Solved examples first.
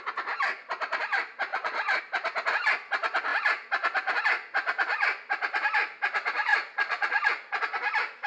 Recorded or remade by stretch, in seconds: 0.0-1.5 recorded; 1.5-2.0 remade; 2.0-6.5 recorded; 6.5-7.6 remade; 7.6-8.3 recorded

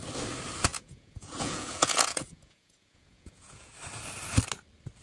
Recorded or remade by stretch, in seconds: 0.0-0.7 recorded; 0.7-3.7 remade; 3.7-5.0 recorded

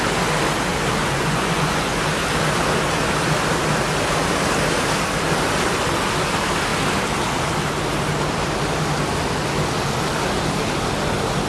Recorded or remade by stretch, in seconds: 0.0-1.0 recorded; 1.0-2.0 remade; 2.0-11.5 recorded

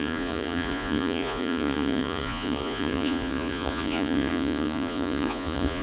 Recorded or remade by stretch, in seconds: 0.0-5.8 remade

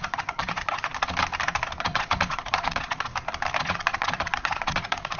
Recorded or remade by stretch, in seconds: 0.0-0.9 remade; 0.9-1.8 recorded; 1.8-3.1 remade; 3.1-3.6 recorded; 3.6-5.2 remade

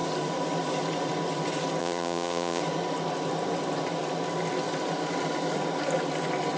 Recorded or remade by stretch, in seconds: 0.0-1.8 recorded; 1.8-2.6 remade; 2.6-6.6 recorded

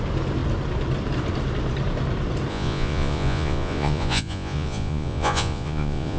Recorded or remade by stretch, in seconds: 0.0-2.5 recorded; 2.5-6.2 remade